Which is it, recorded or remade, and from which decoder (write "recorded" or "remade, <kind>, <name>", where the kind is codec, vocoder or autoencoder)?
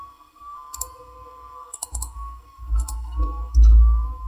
remade, codec, SNAC